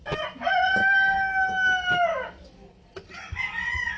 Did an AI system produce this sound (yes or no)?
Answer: no